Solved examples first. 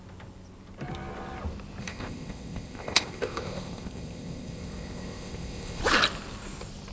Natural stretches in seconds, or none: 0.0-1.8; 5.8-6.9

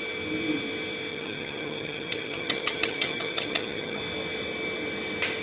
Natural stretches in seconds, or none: 0.0-1.1; 4.0-5.4

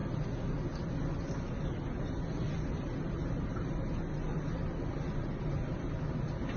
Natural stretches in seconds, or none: 0.0-6.6

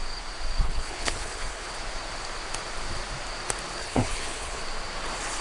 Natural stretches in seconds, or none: 0.0-0.6; 1.7-3.8; 4.6-5.4

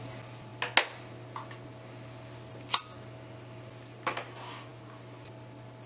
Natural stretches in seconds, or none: 0.0-5.9

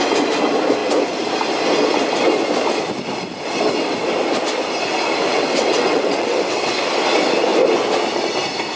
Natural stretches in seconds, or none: 0.0-5.3; 6.7-8.8

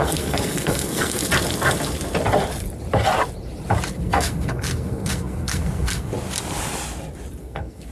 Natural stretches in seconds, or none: 1.2-3.9; 6.1-7.4

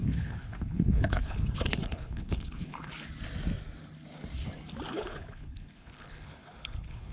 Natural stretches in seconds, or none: 2.9-4.9